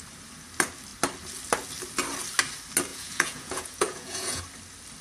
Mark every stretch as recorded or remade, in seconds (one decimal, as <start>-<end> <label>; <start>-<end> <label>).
0.0-2.9 recorded; 2.9-4.4 remade; 4.4-5.0 recorded